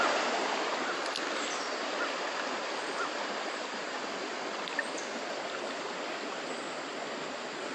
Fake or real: real